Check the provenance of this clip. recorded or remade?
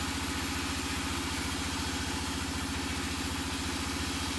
recorded